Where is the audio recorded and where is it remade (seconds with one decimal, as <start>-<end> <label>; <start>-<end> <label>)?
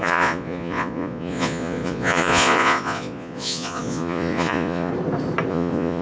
0.0-4.9 remade; 4.9-5.5 recorded; 5.5-6.0 remade